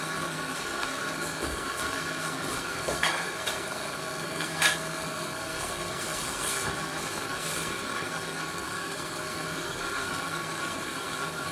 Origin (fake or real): fake